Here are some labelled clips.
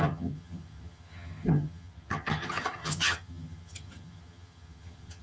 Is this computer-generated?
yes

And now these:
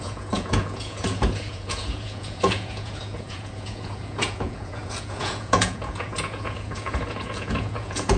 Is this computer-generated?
yes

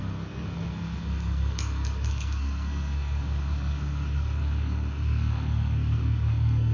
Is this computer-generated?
yes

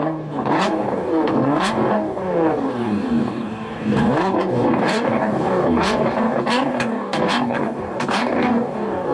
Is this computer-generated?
yes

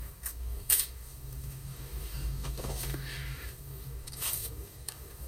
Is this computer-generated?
yes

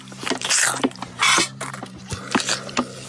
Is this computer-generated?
no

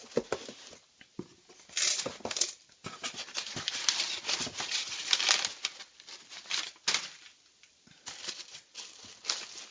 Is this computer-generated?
no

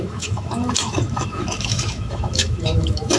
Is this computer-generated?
yes